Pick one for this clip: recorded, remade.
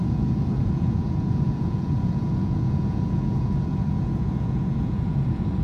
remade